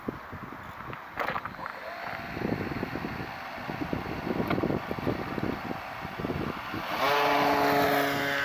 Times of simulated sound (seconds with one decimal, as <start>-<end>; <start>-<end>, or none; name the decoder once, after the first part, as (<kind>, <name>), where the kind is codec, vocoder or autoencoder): none

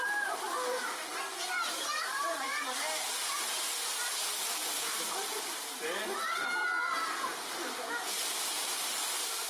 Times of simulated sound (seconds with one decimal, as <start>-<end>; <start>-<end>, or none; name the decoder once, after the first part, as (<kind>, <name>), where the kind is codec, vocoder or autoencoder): 1.3-2.0 (vocoder, BigVGAN v2)

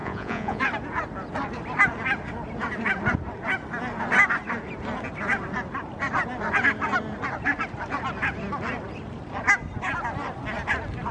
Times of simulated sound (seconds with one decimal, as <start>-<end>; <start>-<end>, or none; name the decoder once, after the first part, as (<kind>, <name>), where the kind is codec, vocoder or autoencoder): 0.0-0.6 (vocoder, Vocos)

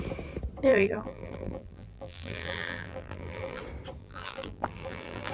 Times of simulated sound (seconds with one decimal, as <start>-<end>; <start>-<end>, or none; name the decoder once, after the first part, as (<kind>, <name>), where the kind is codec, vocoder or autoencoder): 0.7-3.6 (vocoder, BigVGAN v2); 4.0-5.3

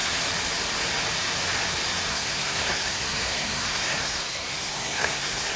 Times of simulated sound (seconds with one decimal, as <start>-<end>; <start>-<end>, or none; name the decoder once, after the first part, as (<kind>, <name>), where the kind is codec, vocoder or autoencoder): 2.1-5.6 (codec, SNAC)